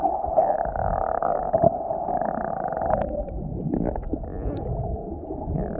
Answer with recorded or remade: recorded